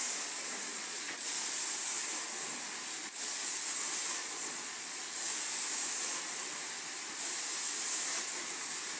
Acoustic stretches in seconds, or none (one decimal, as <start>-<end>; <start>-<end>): 0.0-0.7; 1.4-4.2; 5.0-9.0

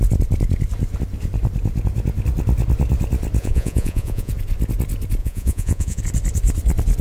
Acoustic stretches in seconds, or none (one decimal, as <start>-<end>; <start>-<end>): 0.0-3.4; 4.3-5.2; 6.0-7.0

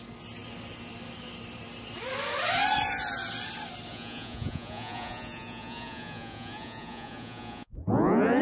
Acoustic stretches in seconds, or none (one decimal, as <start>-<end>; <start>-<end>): 0.0-3.9

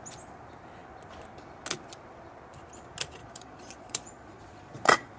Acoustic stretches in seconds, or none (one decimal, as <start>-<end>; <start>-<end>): 0.0-3.2

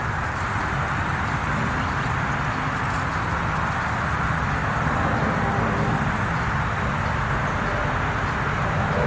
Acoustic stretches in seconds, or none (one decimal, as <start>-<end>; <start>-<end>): 0.0-9.1